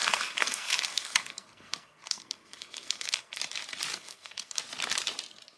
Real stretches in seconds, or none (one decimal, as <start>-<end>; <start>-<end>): 3.4-3.9; 4.6-5.6

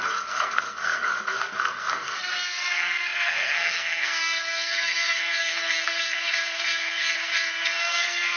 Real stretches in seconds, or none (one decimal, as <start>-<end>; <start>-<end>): none

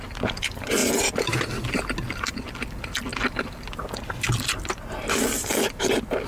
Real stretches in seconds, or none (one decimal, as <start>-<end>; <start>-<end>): 0.0-6.3

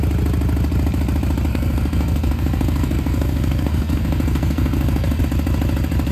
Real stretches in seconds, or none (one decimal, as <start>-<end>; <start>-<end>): 0.0-1.5; 5.2-6.1

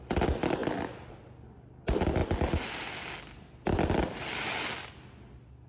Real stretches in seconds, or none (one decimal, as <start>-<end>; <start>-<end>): 0.0-5.7